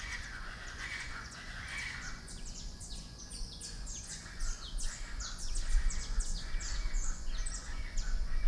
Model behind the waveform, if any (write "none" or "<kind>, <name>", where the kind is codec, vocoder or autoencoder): vocoder, Vocos